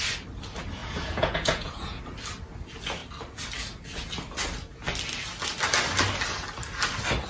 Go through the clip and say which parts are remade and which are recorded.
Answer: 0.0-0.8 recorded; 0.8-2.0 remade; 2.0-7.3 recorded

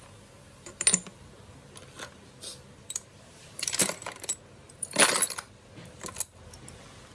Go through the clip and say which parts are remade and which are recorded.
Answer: 0.0-3.1 recorded; 3.1-5.1 remade; 5.1-7.1 recorded

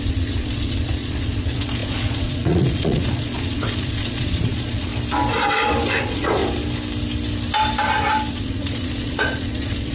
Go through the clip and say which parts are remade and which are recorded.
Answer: 0.0-4.9 remade; 4.9-6.0 recorded; 6.0-6.4 remade; 6.4-8.3 recorded; 8.3-9.9 remade

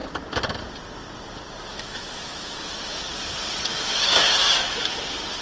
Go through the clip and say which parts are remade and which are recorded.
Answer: 0.0-1.7 recorded; 1.7-3.1 remade; 3.1-3.7 recorded; 3.7-4.8 remade; 4.8-5.4 recorded

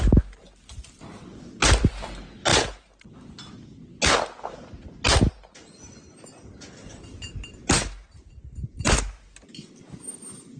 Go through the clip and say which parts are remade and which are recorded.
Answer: 0.0-10.6 recorded

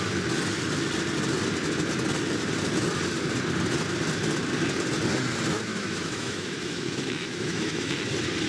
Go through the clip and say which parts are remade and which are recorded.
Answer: 0.0-5.7 recorded; 5.7-8.0 remade; 8.0-8.5 recorded

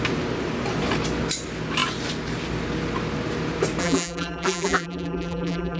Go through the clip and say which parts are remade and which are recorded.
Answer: 0.0-3.8 recorded; 3.8-5.8 remade